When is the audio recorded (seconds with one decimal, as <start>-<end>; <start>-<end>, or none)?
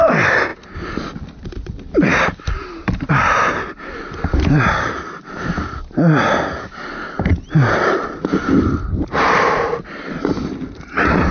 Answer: 0.0-11.3